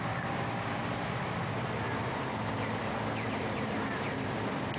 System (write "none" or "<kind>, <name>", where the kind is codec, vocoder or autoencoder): vocoder, BigVGAN v2